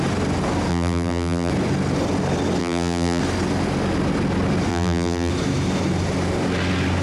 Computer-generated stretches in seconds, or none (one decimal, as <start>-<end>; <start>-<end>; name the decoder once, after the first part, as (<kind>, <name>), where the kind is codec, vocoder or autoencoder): 0.7-1.5 (vocoder, BigVGAN v2); 2.6-3.2; 4.7-5.3